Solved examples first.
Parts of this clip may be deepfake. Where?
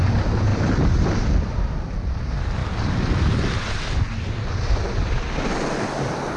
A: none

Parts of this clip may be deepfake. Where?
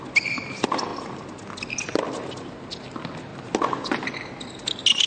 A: none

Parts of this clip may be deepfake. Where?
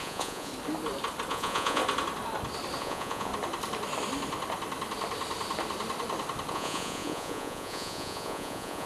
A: 0.0-0.5 (vocoder, Vocos); 1.3-1.8; 2.8-3.3; 6.5-8.9